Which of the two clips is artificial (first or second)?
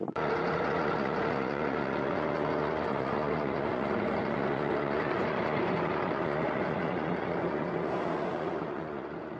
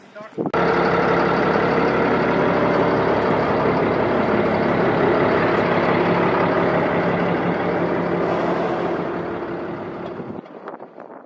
first